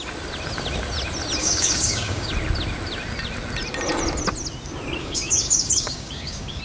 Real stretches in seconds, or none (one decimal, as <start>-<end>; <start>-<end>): 0.0-1.4; 2.3-5.0